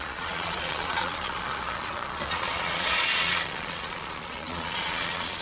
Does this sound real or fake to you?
fake